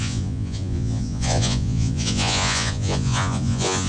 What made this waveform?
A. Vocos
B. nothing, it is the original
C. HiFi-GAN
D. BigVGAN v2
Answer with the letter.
A